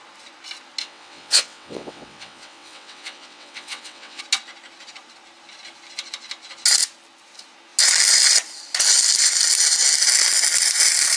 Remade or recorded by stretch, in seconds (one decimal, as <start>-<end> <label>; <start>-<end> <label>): 0.0-0.8 recorded; 0.8-4.2 remade; 4.2-11.2 recorded